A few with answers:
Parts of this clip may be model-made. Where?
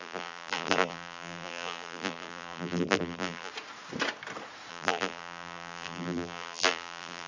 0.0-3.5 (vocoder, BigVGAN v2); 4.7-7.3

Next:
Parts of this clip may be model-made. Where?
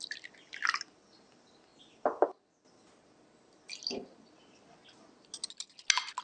none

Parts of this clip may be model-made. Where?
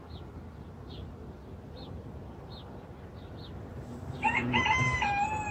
3.7-5.1 (vocoder, BigVGAN v2)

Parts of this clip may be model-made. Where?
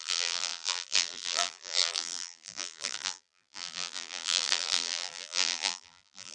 0.0-6.3 (vocoder, BigVGAN v2)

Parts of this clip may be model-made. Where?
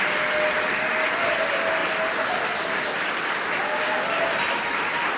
none